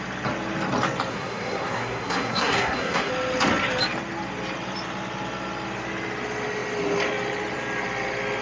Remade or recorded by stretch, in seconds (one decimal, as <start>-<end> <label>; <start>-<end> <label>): 0.0-1.1 recorded; 1.1-3.1 remade; 3.1-8.4 recorded

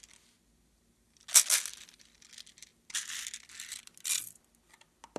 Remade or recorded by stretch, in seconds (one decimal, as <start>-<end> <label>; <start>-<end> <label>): 0.0-5.2 recorded

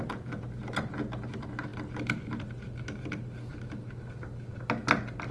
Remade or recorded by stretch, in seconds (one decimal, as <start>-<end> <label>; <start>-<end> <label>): 0.0-5.3 recorded

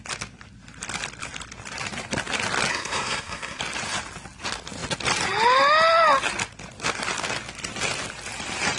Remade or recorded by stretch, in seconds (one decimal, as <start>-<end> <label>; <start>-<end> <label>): 0.0-2.7 recorded; 2.7-3.6 remade; 3.6-8.8 recorded

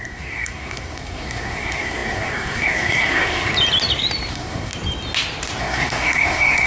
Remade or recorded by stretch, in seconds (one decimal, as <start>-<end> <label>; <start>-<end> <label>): 0.0-3.5 remade; 3.5-4.3 recorded; 4.3-4.7 remade; 4.7-5.6 recorded; 5.6-6.7 remade